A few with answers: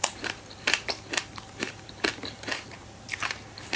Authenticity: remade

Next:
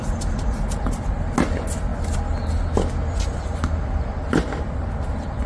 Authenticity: recorded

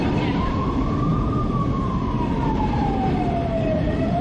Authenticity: remade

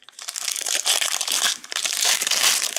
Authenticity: remade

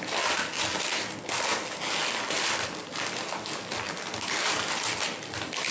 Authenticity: recorded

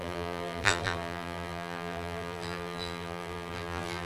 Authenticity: remade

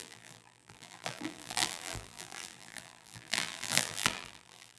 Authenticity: remade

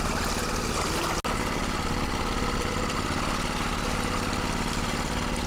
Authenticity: recorded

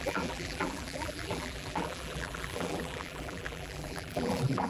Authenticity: remade